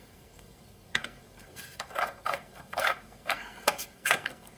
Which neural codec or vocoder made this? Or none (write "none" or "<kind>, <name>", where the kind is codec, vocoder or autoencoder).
codec, SNAC